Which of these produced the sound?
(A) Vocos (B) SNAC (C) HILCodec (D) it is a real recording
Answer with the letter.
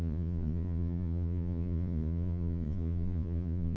A